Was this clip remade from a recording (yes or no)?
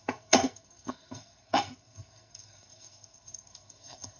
yes